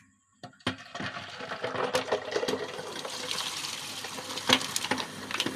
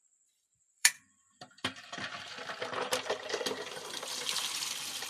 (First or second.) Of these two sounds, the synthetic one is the second